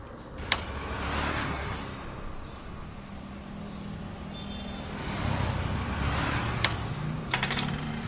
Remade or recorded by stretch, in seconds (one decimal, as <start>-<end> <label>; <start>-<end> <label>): 0.0-1.3 recorded; 1.3-1.8 remade; 1.8-8.1 recorded

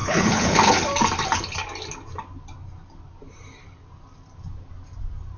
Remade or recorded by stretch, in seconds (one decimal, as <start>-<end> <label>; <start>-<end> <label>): 0.0-0.7 remade; 0.7-5.4 recorded